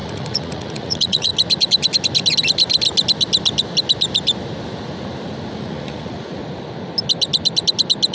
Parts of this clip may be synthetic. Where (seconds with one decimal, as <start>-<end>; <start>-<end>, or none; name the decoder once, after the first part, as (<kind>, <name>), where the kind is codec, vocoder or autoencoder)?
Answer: 0.0-1.3 (vocoder, Vocos); 5.5-6.4

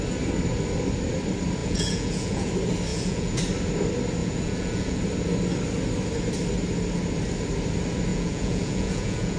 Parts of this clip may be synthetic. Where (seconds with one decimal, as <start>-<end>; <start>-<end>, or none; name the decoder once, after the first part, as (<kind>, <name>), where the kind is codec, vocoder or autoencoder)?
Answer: 1.6-2.5 (vocoder, Vocos); 2.9-3.4; 4.2-5.0; 8.1-9.4

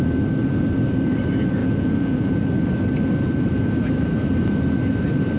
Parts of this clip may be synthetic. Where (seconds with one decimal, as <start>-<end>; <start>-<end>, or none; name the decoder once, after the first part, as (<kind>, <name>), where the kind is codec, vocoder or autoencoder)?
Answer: 1.6-2.5 (vocoder, Vocos)

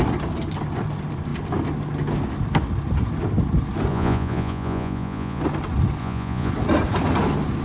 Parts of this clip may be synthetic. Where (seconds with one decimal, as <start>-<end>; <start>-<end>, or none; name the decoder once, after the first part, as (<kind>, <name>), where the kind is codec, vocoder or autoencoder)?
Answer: 3.9-5.4 (vocoder, Vocos); 6.0-6.5

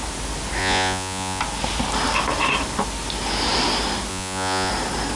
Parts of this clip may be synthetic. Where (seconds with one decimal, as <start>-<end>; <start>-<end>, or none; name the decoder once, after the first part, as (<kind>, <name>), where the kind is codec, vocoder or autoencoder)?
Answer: 0.6-1.4 (vocoder, Vocos); 4.1-4.7

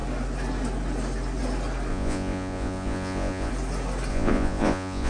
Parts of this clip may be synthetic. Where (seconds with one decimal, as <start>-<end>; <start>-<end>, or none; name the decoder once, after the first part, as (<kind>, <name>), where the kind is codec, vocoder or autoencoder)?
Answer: 1.9-3.5 (vocoder, Vocos); 4.1-5.1

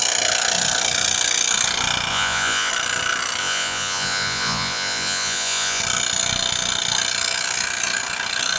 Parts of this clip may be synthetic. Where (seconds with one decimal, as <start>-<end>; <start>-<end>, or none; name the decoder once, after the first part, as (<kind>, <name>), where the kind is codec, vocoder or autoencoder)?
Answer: 2.1-2.7 (vocoder, Vocos); 3.4-5.8